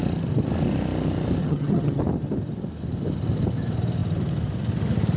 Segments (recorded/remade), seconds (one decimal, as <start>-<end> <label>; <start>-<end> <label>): 0.0-1.4 recorded; 1.4-2.0 remade; 2.0-5.2 recorded